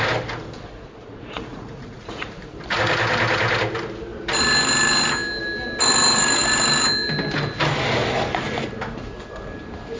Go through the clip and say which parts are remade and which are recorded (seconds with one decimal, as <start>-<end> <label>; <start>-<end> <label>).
0.0-1.0 recorded; 1.0-2.3 remade; 2.3-10.0 recorded